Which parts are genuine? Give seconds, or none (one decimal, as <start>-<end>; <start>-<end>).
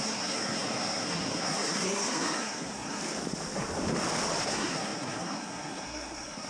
3.0-4.4